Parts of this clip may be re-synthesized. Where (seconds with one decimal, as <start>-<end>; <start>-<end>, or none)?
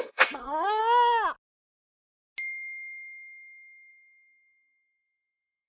0.0-0.8; 3.9-5.7